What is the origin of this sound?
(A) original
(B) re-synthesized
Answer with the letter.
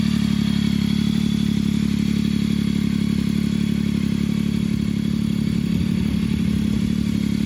A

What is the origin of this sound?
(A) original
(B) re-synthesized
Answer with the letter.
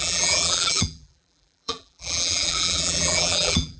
B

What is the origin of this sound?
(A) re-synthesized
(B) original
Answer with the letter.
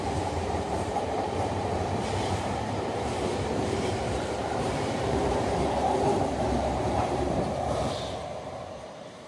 A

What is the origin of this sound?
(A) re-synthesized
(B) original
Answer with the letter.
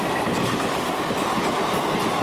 B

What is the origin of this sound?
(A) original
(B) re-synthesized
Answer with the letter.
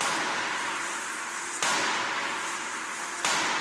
A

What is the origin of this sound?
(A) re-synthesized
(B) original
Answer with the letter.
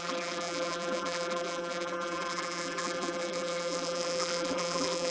A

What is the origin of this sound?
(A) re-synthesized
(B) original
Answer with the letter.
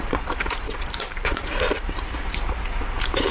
A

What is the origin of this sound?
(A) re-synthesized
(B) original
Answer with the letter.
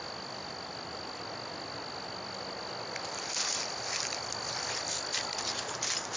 B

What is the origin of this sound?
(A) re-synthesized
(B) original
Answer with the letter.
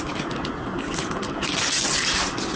B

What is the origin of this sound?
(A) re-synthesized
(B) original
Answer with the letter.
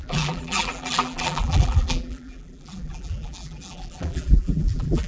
A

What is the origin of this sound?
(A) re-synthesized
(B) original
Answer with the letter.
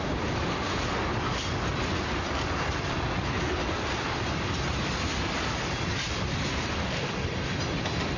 A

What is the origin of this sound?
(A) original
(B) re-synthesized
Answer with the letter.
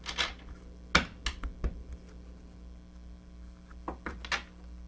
A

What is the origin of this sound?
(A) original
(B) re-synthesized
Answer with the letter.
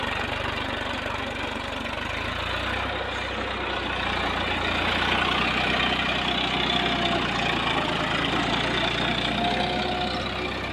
A